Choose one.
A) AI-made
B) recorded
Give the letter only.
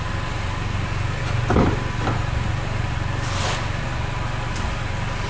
B